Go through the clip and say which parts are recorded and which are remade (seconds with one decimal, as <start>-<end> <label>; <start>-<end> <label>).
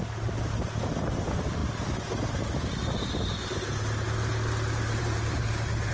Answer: 0.0-5.9 recorded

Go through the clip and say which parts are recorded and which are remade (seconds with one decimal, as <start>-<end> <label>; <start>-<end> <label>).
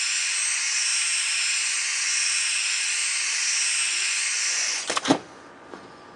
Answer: 0.0-0.9 remade; 0.9-1.5 recorded; 1.5-3.0 remade; 3.0-3.8 recorded; 3.8-6.2 remade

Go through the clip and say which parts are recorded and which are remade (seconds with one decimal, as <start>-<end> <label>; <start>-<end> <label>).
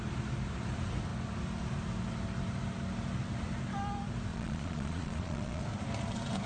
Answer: 0.0-4.3 recorded; 4.3-5.6 remade; 5.6-6.5 recorded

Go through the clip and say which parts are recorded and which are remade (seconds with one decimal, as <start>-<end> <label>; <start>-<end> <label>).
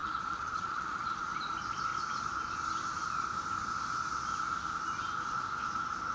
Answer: 0.0-1.3 remade; 1.3-6.1 recorded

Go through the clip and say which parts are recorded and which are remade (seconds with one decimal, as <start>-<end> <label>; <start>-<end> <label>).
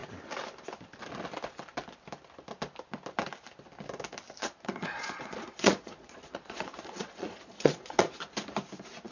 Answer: 0.0-4.4 recorded; 4.4-8.2 remade; 8.2-9.1 recorded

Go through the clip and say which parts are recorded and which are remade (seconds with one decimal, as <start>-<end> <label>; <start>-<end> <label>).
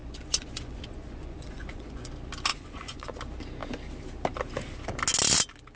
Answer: 0.0-2.1 remade; 2.1-2.5 recorded; 2.5-3.2 remade; 3.2-5.8 recorded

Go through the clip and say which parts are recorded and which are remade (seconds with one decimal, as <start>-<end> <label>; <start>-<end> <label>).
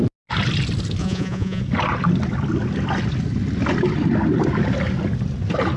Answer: 0.0-1.0 recorded; 1.0-1.6 remade; 1.6-5.8 recorded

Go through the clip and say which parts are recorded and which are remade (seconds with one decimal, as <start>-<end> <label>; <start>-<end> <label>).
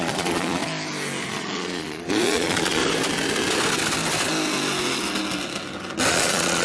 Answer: 0.0-0.6 remade; 0.6-1.3 recorded; 1.3-2.8 remade; 2.8-6.1 recorded; 6.1-6.6 remade